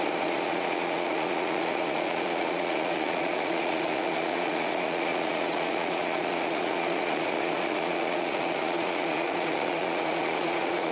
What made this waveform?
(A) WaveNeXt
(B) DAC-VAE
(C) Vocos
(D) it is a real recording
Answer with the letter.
C